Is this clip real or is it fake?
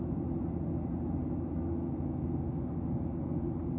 real